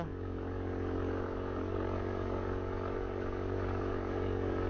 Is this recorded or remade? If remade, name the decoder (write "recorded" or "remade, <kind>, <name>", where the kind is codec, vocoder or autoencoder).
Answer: remade, codec, DAC